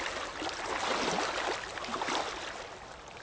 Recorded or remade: recorded